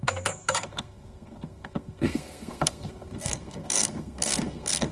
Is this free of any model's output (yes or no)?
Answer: no